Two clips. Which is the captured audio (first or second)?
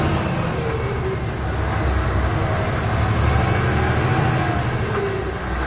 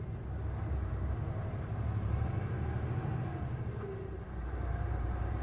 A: first